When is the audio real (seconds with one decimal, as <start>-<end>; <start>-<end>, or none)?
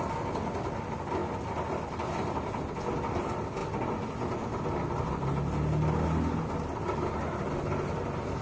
0.0-8.4